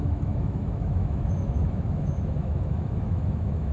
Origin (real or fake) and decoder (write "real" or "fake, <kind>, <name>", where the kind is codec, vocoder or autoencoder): fake, autoencoder, DAC-VAE